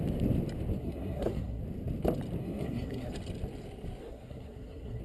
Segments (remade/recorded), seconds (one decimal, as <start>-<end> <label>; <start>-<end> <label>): 0.0-0.8 recorded; 0.8-1.6 remade; 1.6-2.4 recorded; 2.4-3.1 remade; 3.1-4.0 recorded; 4.0-5.0 remade